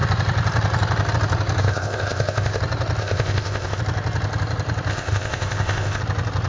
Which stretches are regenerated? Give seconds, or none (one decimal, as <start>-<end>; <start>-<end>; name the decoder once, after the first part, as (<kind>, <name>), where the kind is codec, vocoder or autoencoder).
1.6-2.6 (codec, ZipCodec); 3.0-3.8; 4.9-6.0